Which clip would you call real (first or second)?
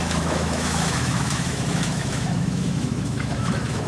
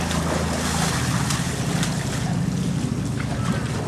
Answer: second